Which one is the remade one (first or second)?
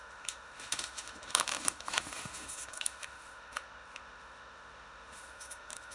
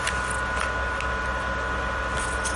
first